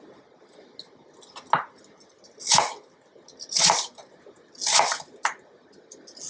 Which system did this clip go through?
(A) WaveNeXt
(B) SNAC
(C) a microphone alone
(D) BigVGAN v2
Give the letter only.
C